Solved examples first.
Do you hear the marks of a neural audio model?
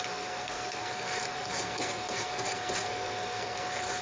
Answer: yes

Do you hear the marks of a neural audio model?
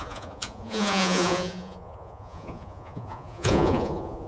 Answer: yes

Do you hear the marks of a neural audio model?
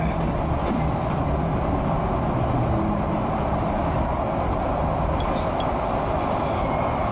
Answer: no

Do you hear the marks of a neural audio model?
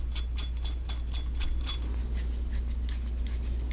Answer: no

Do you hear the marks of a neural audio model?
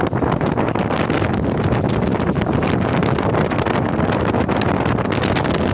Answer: no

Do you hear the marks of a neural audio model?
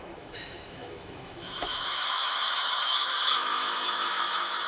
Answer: yes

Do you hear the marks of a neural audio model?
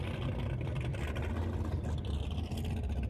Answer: no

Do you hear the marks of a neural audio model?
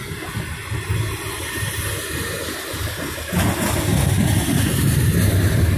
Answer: no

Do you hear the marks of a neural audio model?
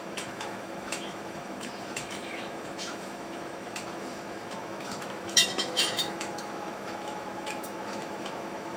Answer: yes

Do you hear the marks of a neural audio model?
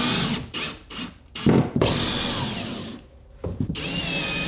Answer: no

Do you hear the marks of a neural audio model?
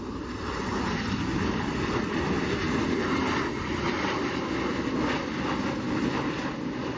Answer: no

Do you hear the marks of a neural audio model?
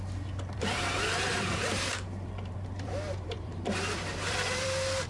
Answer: yes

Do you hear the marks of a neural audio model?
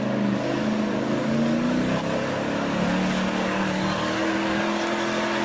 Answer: yes